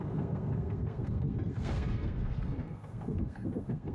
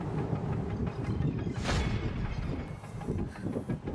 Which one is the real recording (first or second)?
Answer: second